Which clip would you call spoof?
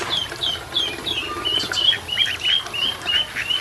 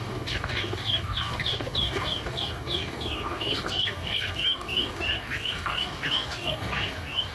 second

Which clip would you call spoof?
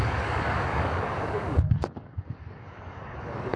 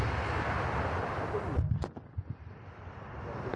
first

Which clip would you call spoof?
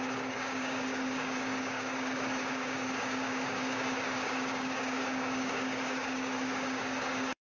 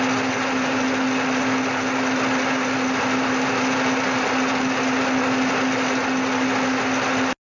first